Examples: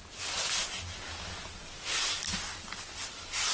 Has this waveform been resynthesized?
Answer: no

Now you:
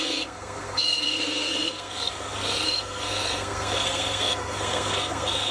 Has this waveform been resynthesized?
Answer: yes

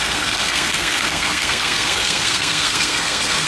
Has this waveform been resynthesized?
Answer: yes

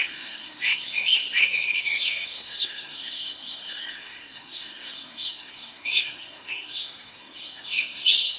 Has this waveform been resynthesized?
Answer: yes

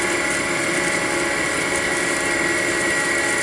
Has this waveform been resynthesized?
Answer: no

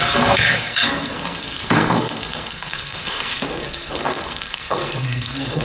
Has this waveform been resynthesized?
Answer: yes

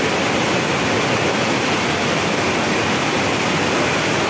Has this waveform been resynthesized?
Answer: no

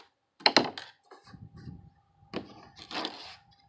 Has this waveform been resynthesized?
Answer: no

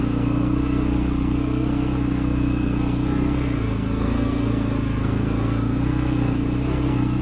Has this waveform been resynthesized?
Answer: yes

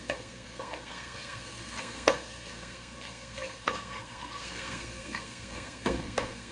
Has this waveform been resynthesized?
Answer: yes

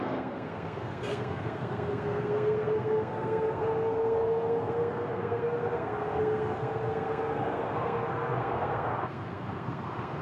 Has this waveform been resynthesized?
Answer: yes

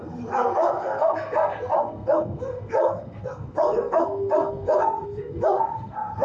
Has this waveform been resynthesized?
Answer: yes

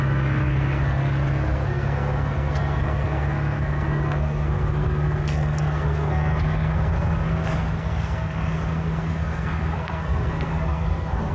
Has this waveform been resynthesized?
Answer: yes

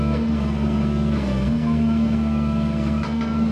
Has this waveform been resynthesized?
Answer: yes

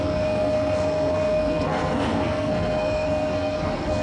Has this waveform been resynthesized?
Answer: yes